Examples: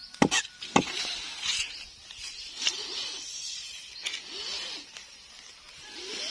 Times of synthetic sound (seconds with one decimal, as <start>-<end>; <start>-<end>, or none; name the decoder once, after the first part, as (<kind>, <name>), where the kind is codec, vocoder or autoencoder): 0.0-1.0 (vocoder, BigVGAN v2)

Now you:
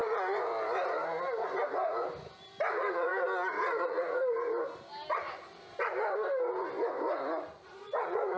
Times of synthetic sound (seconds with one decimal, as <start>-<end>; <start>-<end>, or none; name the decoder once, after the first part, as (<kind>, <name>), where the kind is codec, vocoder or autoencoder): 2.7-3.1 (vocoder, Vocos); 3.8-4.2; 7.7-8.4

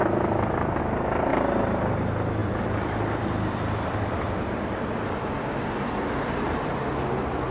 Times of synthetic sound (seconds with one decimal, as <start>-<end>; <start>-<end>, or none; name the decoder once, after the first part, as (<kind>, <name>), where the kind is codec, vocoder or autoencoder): 0.0-0.8 (vocoder, BigVGAN v2); 2.4-5.4